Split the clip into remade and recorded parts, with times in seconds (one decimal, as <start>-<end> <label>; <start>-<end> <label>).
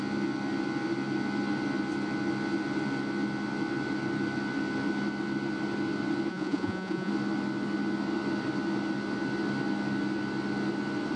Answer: 0.0-6.3 recorded; 6.3-7.1 remade; 7.1-11.2 recorded